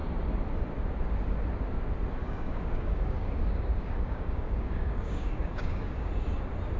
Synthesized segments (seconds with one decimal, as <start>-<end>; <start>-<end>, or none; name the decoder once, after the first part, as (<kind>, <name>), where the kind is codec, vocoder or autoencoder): 2.2-6.1 (codec, DAC)